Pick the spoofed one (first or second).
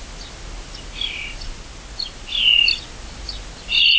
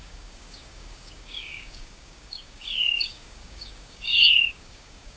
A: second